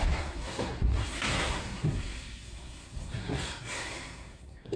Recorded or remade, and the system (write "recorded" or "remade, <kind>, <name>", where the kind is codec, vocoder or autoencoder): remade, codec, SNAC